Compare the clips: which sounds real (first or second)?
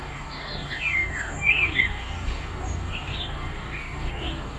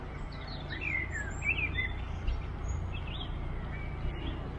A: second